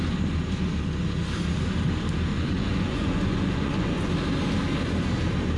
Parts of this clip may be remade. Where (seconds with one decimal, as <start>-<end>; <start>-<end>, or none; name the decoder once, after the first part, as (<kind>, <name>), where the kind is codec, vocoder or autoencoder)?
2.3-4.1 (vocoder, Vocos)